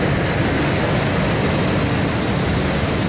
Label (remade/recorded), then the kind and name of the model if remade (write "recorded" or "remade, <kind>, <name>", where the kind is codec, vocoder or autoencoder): recorded